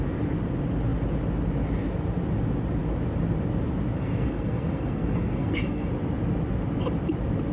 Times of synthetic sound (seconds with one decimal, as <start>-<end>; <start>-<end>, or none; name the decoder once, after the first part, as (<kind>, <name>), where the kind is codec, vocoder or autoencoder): 4.0-5.9 (codec, SNAC)